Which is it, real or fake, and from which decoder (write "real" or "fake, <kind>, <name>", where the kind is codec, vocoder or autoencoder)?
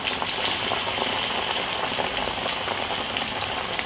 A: real